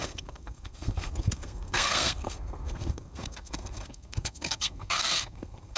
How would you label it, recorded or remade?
remade